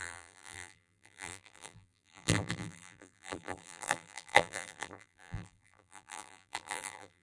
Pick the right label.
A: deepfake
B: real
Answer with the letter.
A